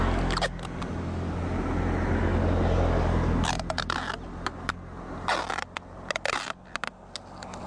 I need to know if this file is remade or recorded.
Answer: recorded